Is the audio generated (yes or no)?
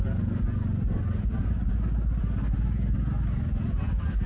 no